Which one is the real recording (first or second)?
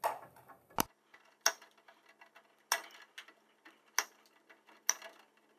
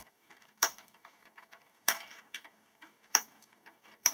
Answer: first